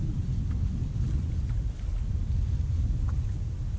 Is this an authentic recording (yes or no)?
yes